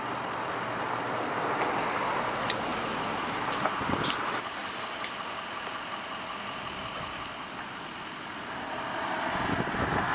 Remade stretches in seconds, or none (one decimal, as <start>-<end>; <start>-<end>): none